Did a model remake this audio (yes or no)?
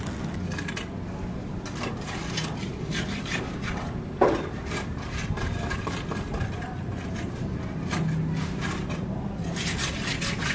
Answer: no